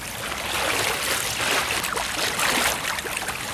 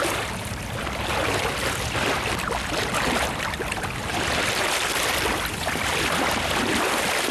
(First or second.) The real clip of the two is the first